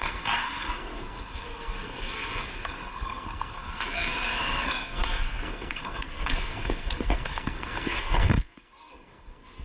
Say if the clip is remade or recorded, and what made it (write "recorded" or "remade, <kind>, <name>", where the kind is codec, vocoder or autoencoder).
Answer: remade, codec, SNAC